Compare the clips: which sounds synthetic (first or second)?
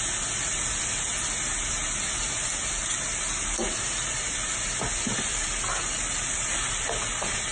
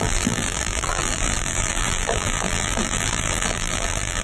second